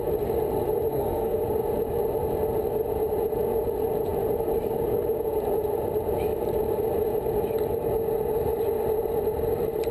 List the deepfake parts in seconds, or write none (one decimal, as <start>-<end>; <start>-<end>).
0.9-1.4